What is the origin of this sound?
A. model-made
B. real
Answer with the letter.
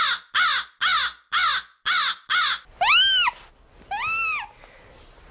B